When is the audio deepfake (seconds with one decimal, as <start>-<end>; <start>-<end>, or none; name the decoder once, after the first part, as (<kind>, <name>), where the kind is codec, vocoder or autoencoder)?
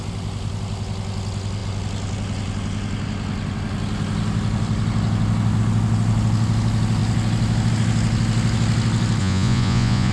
9.2-10.1 (vocoder, Vocos)